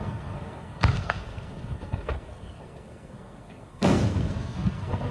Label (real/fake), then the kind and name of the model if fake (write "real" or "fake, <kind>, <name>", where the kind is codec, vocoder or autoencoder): fake, codec, SNAC